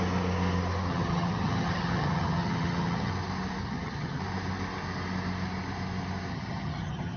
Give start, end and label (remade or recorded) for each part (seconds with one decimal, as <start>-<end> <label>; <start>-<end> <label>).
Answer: 0.0-0.9 recorded; 0.9-3.1 remade; 3.1-3.6 recorded; 3.6-4.2 remade; 4.2-6.3 recorded; 6.3-7.2 remade

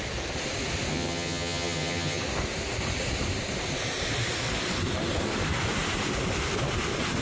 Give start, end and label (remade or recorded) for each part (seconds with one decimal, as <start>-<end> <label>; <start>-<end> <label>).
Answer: 0.0-0.9 recorded; 0.9-2.2 remade; 2.2-7.2 recorded

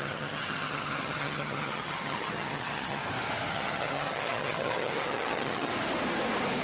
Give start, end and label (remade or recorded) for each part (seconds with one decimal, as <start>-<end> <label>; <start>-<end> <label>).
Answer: 0.0-3.0 remade; 3.0-3.5 recorded; 3.5-5.7 remade; 5.7-6.6 recorded

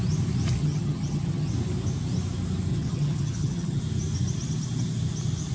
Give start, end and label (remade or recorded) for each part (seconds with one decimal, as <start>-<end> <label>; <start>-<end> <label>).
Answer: 0.0-0.6 recorded; 0.6-1.5 remade; 1.5-2.7 recorded; 2.7-3.8 remade; 3.8-5.5 recorded